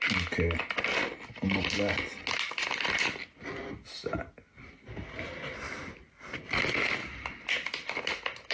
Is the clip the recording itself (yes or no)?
yes